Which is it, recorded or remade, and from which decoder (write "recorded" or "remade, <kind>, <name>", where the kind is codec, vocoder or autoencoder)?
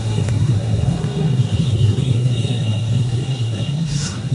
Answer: remade, codec, SNAC